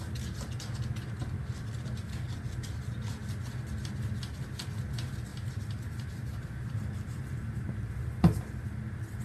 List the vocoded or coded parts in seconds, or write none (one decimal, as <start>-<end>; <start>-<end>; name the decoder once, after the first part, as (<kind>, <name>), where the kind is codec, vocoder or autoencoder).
5.3-7.7 (vocoder, BigVGAN v2)